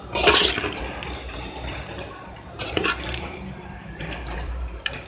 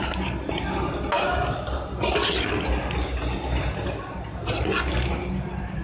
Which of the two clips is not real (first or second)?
first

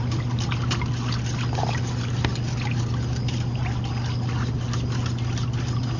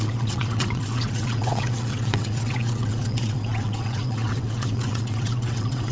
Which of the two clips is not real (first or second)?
second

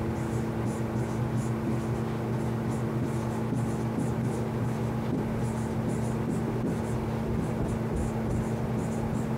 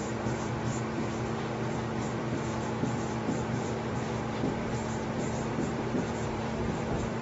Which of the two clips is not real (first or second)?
second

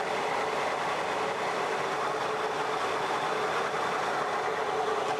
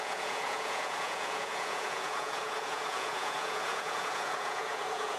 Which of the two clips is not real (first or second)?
second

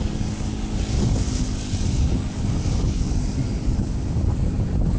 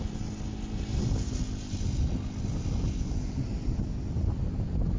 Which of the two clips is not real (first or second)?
first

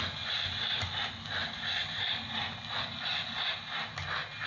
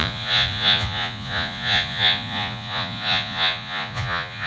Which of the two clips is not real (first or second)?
second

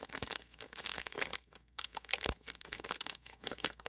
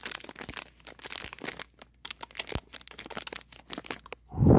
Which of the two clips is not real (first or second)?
first